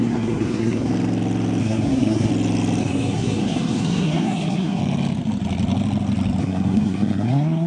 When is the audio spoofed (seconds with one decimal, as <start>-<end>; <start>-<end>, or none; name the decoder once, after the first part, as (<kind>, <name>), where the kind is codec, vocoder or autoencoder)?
0.0-0.9 (codec, SNAC); 1.6-2.3; 2.8-4.8; 6.4-7.7